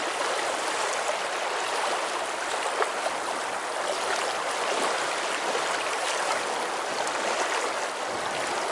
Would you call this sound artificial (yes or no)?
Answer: no